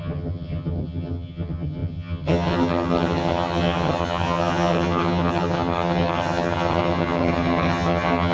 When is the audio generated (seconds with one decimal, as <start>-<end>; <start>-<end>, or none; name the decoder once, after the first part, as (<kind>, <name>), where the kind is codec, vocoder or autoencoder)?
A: 0.0-8.3 (vocoder, HiFi-GAN)